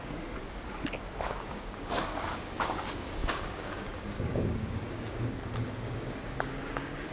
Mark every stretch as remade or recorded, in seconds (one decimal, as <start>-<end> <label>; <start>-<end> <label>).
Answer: 0.0-0.4 remade; 0.4-1.4 recorded; 1.4-7.1 remade